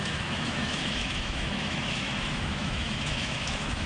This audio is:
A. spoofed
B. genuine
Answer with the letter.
A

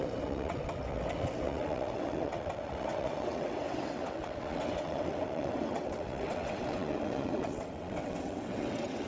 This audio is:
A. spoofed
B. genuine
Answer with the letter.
A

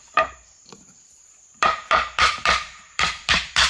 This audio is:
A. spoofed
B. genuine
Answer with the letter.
A